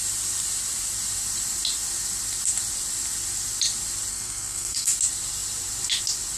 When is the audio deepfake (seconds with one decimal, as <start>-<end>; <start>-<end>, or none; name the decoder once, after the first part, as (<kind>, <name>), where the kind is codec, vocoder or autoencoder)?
4.1-4.9 (codec, SNAC)